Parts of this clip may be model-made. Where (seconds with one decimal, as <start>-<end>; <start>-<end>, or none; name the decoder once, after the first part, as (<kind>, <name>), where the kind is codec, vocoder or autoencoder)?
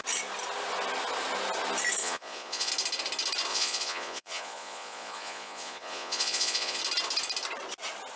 2.0-2.7 (vocoder, Vocos); 3.5-6.8